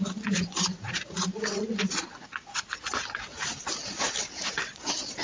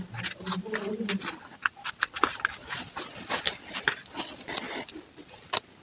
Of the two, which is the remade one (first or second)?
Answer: first